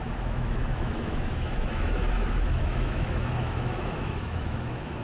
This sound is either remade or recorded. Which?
remade